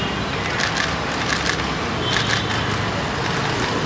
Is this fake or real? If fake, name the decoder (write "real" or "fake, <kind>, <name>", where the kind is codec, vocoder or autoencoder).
real